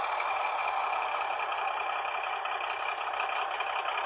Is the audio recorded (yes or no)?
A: yes